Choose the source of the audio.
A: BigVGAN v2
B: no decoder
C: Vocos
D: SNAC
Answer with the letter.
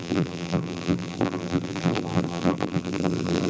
A